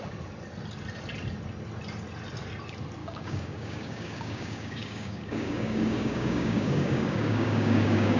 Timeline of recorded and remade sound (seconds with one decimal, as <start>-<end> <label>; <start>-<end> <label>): 0.0-3.0 recorded; 3.0-8.2 remade